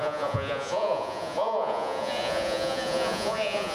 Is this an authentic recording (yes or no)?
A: no